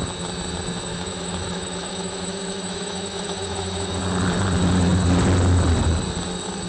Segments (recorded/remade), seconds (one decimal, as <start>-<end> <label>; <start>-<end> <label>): 0.0-0.9 recorded; 0.9-4.0 remade; 4.0-6.7 recorded